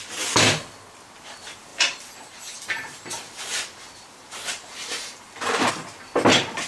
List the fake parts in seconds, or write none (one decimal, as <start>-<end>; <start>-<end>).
1.7-5.7